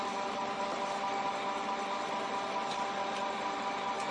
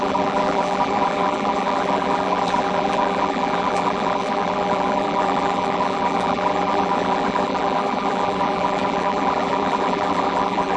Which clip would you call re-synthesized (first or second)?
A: second